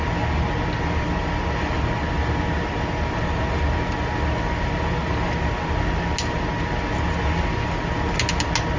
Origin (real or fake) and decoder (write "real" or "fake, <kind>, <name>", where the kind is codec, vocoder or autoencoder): real